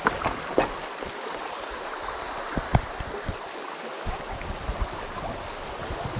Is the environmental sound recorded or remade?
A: recorded